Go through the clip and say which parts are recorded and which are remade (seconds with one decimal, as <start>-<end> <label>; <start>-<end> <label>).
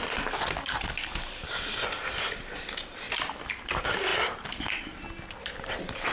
0.0-6.1 recorded